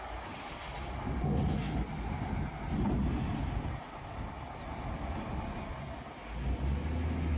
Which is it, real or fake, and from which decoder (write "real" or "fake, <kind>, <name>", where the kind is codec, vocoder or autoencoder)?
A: real